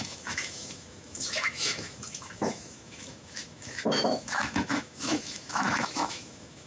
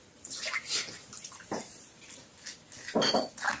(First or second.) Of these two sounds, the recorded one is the second